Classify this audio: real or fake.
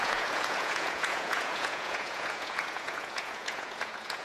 fake